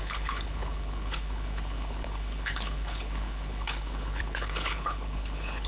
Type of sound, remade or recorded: remade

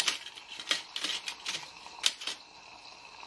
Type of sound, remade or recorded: recorded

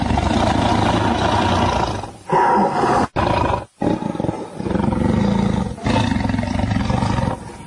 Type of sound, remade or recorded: recorded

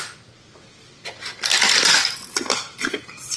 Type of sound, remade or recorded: recorded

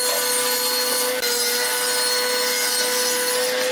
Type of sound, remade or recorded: recorded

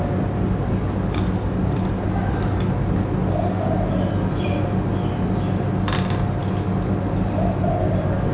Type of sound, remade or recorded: recorded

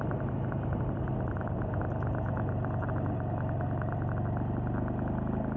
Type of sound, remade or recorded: recorded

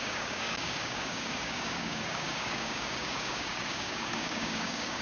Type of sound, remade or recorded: remade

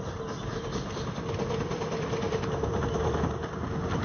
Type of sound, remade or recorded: recorded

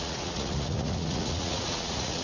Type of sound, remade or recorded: remade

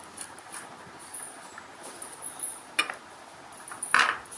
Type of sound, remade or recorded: recorded